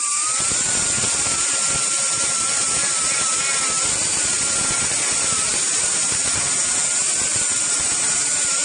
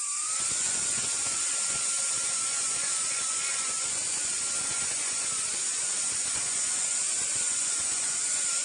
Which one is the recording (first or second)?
first